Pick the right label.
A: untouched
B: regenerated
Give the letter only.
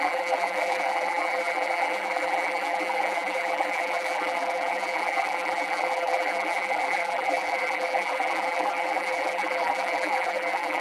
B